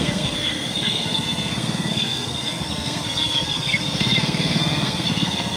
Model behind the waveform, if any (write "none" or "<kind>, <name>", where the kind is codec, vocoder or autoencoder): codec, SNAC